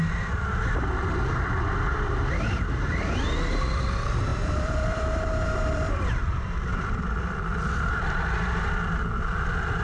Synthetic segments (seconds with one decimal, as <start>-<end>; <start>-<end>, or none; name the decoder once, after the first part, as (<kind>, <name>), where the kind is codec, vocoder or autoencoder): 1.0-1.5 (vocoder, BigVGAN v2); 4.3-8.7